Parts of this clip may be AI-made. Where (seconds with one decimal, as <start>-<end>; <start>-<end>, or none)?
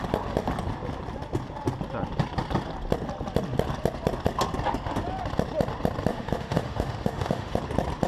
6.1-7.6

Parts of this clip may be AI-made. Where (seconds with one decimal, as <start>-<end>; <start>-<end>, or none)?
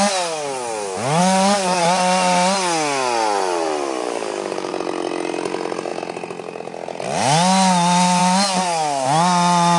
1.2-1.8; 4.0-4.7